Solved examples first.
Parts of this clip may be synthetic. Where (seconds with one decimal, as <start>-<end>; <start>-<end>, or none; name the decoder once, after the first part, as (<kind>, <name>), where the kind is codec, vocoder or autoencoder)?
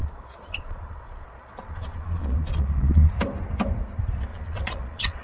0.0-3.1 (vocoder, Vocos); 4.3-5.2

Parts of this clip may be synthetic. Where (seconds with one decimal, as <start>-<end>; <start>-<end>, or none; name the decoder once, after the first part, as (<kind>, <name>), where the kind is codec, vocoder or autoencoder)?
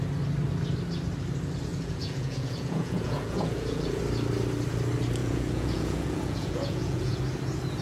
1.7-4.0 (vocoder, Vocos); 5.2-7.2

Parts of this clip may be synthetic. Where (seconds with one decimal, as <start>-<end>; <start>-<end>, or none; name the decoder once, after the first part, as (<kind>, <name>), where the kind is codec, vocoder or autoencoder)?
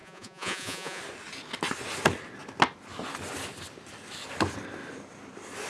0.0-1.0 (vocoder, Vocos)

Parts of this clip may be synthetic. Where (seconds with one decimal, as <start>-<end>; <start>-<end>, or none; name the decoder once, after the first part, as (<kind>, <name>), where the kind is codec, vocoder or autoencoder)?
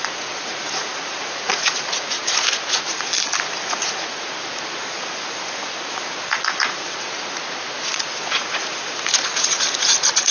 0.0-3.1 (vocoder, Vocos); 3.7-10.3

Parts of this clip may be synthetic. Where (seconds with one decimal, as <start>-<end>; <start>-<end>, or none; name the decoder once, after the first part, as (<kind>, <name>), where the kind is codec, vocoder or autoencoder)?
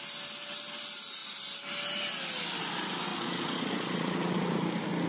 3.1-4.5 (vocoder, Vocos)